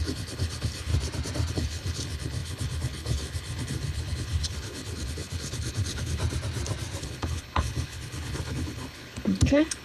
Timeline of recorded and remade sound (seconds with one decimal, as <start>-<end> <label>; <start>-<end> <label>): 0.0-0.9 remade; 0.9-1.5 recorded; 1.5-6.2 remade; 6.2-7.0 recorded; 7.0-9.8 remade

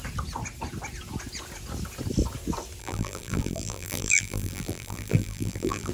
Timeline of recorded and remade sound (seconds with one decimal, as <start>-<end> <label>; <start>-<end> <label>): 0.0-2.8 recorded; 2.8-5.9 remade